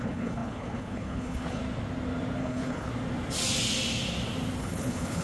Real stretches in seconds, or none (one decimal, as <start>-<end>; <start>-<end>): 1.6-2.4; 2.9-4.6